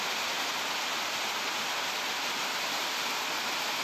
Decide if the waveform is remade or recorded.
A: recorded